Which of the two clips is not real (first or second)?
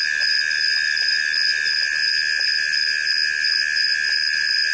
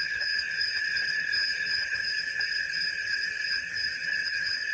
second